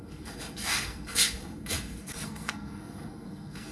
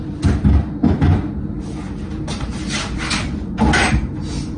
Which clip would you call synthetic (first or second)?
first